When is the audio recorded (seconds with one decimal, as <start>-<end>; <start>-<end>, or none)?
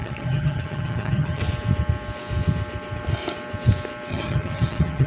1.4-4.1